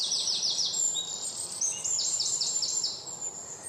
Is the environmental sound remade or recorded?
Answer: remade